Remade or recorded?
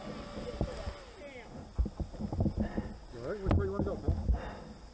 recorded